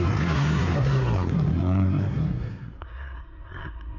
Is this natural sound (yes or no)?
no